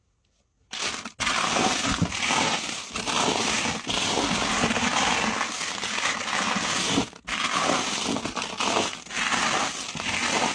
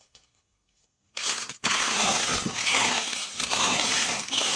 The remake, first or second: second